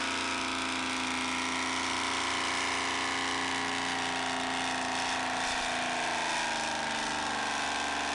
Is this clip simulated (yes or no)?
no